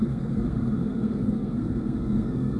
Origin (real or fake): fake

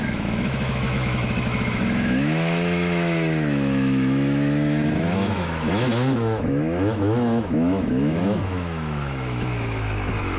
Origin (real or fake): fake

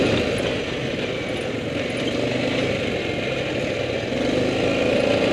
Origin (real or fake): real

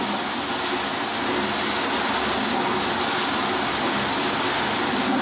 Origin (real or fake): real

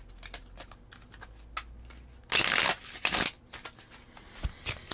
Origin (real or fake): real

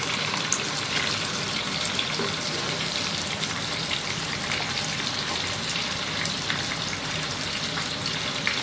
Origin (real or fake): fake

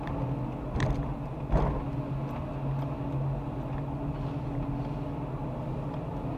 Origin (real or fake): real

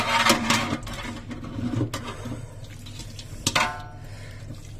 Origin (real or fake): real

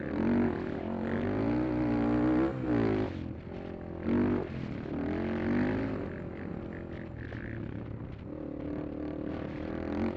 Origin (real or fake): real